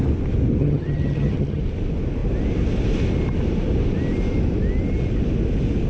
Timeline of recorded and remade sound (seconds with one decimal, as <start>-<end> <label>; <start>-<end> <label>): 0.0-0.6 recorded; 0.6-1.6 remade; 1.6-5.9 recorded